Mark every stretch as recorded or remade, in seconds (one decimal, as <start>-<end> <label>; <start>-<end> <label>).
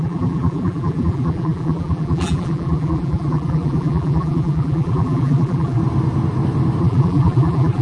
0.0-5.8 remade; 5.8-6.8 recorded; 6.8-7.8 remade